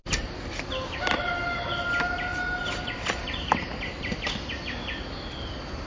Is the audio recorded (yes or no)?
yes